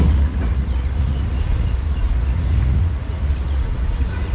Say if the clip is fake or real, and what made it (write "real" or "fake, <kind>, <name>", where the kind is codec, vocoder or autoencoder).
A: fake, vocoder, Vocos